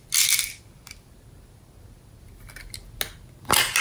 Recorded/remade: recorded